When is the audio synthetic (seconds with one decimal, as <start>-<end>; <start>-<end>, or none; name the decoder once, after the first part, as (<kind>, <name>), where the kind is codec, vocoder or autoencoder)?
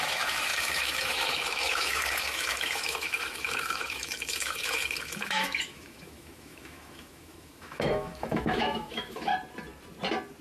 0.0-9.3 (autoencoder, DAC-VAE)